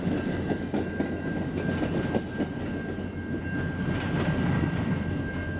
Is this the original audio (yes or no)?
yes